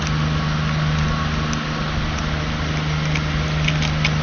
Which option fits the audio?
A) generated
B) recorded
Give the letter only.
B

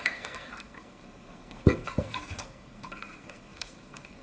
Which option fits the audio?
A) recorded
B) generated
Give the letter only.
B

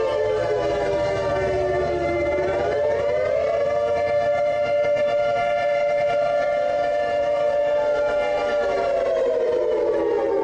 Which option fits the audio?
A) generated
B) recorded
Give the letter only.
A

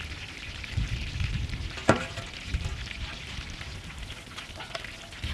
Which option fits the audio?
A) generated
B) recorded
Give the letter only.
B